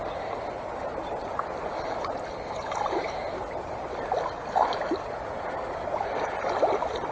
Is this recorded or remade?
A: recorded